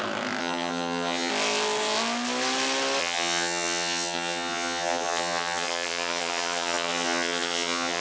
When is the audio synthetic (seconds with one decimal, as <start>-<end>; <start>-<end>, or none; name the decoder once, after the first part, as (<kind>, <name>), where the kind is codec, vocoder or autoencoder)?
0.4-1.3 (vocoder, HiFi-GAN); 3.0-8.0

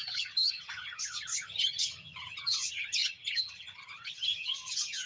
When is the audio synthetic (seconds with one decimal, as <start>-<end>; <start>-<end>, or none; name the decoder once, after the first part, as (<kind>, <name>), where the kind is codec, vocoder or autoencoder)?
0.0-5.1 (vocoder, HiFi-GAN)

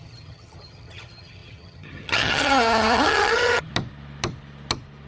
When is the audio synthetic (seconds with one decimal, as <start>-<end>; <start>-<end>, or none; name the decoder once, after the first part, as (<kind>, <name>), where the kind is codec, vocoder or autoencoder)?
0.0-3.7 (vocoder, HiFi-GAN)

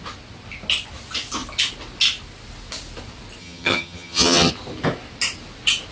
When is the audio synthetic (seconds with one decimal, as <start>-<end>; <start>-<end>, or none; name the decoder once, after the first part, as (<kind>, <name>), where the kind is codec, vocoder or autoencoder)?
3.4-4.5 (vocoder, HiFi-GAN)

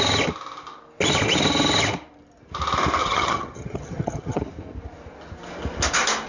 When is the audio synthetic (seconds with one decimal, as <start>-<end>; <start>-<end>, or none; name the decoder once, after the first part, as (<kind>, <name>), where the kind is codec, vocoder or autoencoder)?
3.0-4.4 (vocoder, HiFi-GAN)

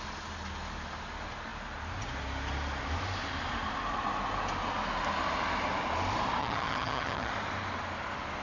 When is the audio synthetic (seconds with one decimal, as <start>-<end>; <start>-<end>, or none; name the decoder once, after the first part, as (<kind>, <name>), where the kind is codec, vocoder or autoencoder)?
6.4-7.3 (vocoder, HiFi-GAN)

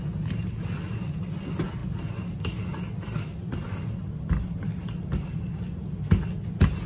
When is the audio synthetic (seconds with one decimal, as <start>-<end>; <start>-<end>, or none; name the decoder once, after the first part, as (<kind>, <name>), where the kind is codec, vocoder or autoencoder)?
none

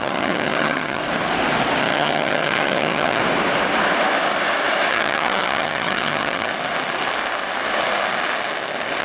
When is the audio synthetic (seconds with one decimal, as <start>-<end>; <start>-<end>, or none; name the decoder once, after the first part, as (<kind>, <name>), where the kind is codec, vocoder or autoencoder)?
0.0-1.0 (vocoder, HiFi-GAN); 1.8-3.2; 4.9-6.5